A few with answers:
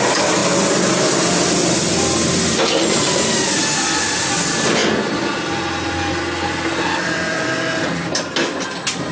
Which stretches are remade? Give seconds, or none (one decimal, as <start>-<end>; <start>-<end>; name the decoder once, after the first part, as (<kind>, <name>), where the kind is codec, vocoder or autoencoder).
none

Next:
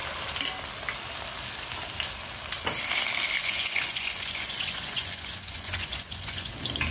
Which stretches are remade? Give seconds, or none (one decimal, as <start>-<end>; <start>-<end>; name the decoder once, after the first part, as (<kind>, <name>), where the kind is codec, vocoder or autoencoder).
3.4-6.5 (vocoder, Vocos)

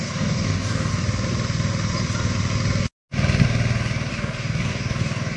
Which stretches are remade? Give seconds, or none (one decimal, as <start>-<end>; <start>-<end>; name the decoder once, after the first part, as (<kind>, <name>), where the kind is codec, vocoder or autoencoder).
0.0-0.9 (codec, DAC); 4.1-5.4

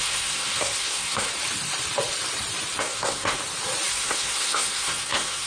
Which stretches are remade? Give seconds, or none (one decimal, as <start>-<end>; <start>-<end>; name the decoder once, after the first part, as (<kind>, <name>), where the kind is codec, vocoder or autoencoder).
0.0-1.3 (codec, SNAC); 2.8-3.4; 3.9-5.5

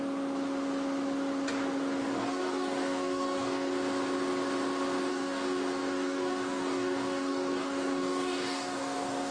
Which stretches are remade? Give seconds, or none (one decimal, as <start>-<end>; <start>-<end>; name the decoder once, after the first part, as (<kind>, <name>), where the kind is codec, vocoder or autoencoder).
2.0-3.7 (codec, DAC); 5.1-9.3